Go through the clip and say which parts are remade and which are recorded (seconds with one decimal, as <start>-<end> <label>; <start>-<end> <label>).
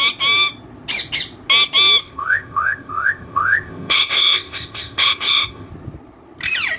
0.0-2.0 recorded; 2.0-5.7 remade; 5.7-6.8 recorded